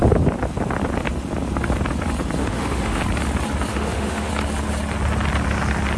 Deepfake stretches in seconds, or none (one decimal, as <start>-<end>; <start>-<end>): 2.4-3.0; 3.7-4.3